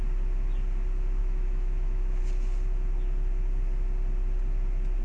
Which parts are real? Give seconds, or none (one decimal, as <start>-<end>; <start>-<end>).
0.0-1.2; 2.2-5.0